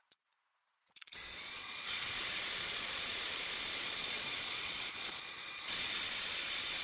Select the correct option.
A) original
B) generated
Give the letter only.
B